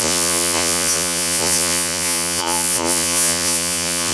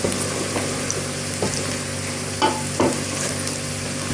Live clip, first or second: second